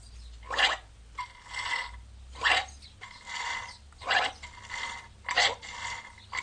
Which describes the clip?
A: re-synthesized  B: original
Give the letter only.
B